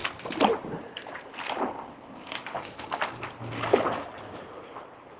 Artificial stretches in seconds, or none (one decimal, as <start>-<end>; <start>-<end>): none